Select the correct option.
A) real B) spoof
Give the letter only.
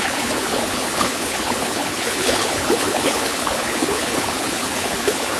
B